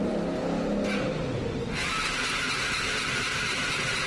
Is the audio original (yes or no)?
yes